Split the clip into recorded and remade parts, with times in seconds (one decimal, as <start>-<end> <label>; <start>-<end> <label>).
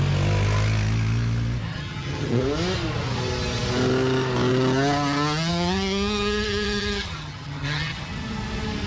0.0-1.7 recorded; 1.7-2.4 remade; 2.4-5.5 recorded; 5.5-8.2 remade; 8.2-8.9 recorded